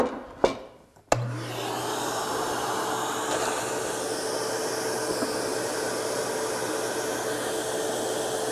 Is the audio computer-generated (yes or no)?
no